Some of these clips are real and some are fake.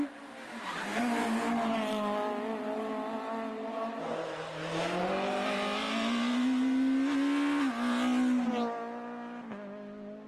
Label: real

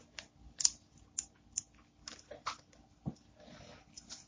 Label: real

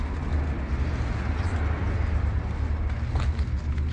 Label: real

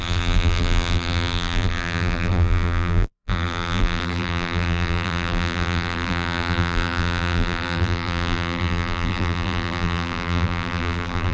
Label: fake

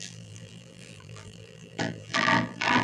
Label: fake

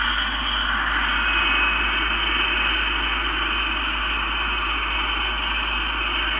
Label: real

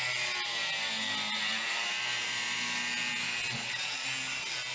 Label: real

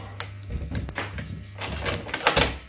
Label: real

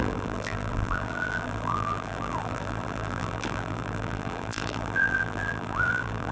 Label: fake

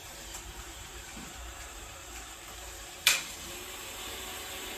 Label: fake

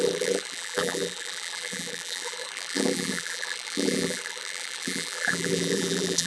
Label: fake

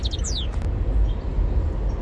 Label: real